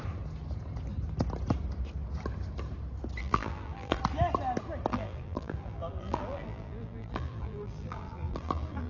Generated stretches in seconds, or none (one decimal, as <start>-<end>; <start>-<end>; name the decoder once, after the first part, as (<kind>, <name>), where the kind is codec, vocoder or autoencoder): 3.2-4.0 (vocoder, BigVGAN v2); 4.9-8.9